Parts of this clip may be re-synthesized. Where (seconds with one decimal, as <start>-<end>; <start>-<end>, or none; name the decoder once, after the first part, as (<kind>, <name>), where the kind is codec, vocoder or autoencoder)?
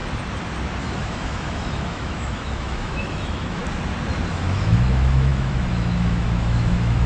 0.8-3.6 (autoencoder, DAC-VAE); 4.3-7.1